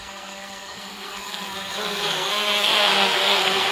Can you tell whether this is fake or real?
fake